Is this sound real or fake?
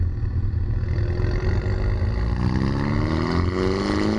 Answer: real